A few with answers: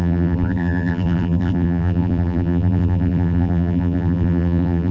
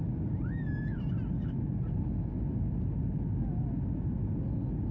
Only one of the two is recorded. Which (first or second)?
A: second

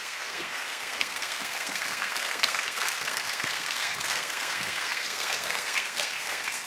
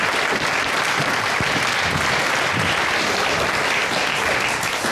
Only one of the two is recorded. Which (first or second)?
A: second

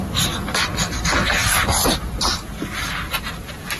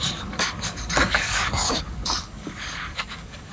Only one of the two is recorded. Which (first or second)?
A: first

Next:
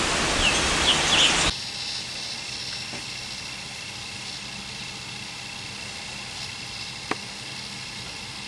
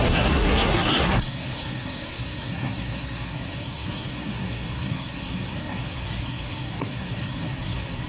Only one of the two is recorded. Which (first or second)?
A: first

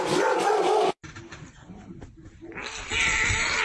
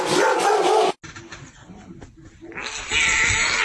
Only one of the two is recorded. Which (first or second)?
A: second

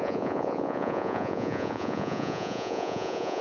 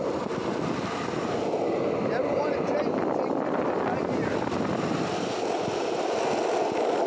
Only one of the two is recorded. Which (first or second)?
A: second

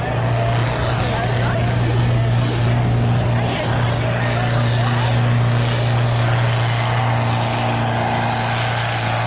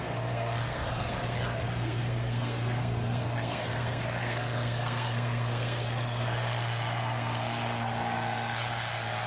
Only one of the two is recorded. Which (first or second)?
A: first